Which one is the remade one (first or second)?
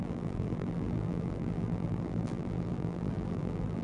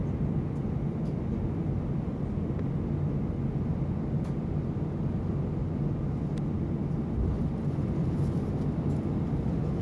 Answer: first